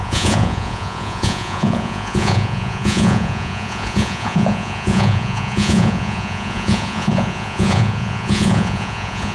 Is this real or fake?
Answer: fake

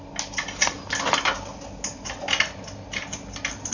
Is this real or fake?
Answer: real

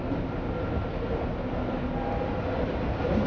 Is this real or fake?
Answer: real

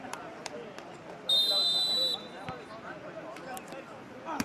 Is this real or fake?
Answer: fake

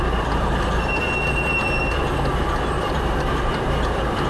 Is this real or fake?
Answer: fake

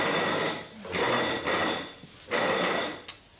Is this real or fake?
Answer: real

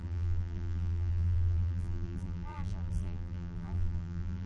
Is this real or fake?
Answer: fake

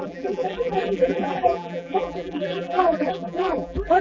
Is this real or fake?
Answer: fake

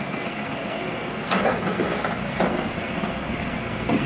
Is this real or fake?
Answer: fake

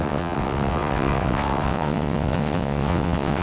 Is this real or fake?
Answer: fake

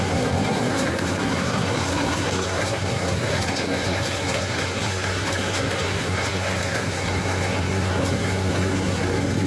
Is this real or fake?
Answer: fake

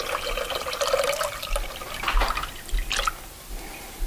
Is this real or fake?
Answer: real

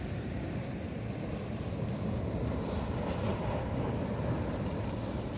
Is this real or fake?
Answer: real